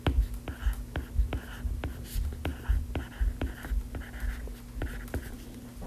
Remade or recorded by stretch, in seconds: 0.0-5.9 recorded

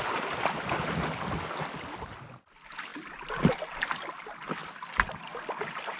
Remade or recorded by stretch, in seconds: 0.0-6.0 recorded

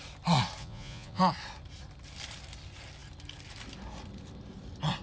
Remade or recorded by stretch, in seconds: 0.0-0.6 recorded; 0.6-1.2 remade; 1.2-5.0 recorded

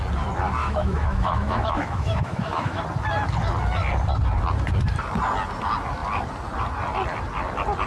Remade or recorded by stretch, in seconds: 0.0-0.6 recorded; 0.6-2.8 remade; 2.8-7.9 recorded